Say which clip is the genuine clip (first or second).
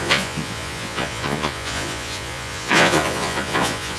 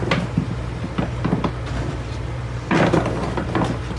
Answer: second